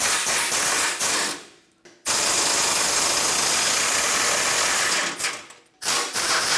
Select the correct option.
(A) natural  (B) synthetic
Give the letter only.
A